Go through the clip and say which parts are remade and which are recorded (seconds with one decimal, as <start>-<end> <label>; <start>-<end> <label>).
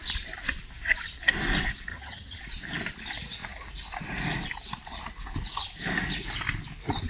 0.0-1.9 recorded; 1.9-2.4 remade; 2.4-7.1 recorded